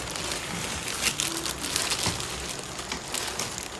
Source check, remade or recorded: recorded